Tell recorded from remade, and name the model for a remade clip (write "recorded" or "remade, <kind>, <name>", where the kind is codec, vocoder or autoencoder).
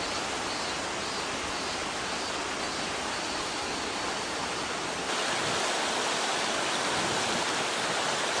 recorded